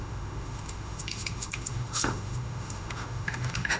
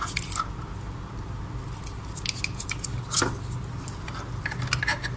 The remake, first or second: first